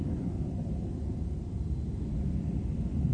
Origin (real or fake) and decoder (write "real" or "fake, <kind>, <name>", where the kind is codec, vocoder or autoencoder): real